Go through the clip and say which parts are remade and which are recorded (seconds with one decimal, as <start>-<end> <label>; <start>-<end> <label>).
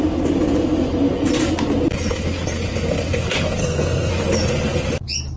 0.0-3.6 recorded; 3.6-4.1 remade; 4.1-5.4 recorded